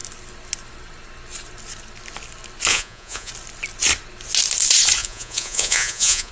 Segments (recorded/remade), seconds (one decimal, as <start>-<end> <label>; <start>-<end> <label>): 0.0-2.7 recorded; 2.7-3.3 remade; 3.3-5.0 recorded; 5.0-6.3 remade